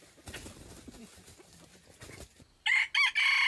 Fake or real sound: real